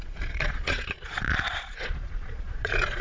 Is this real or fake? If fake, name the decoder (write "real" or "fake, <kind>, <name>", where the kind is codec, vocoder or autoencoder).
fake, vocoder, Vocos